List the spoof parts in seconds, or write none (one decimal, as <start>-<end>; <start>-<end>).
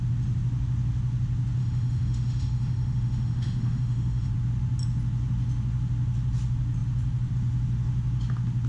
1.6-4.3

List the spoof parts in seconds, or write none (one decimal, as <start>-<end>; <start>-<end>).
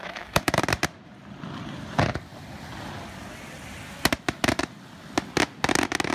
0.0-0.6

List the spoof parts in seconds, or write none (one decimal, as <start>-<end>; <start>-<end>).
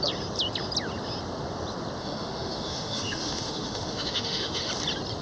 2.0-4.7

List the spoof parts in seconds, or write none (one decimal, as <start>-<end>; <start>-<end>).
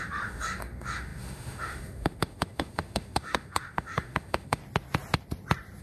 0.0-4.6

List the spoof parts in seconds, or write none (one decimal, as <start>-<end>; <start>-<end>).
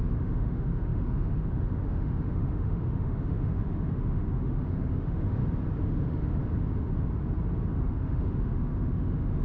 0.0-5.4; 5.9-6.4; 7.8-9.4